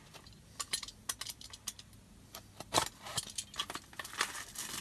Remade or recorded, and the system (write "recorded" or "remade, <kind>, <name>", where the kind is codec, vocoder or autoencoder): recorded